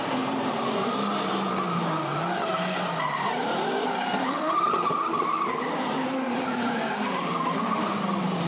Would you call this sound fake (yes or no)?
yes